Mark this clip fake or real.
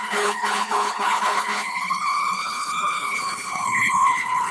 fake